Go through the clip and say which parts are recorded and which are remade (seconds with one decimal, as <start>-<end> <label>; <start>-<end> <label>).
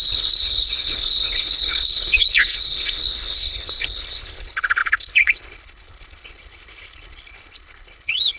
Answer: 0.0-8.4 remade